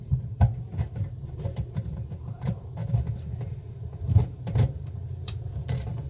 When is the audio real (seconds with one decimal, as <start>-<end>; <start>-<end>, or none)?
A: 2.8-4.2

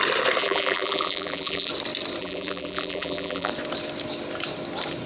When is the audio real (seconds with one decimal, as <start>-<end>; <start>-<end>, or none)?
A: 0.0-0.4; 1.7-2.2; 3.5-5.1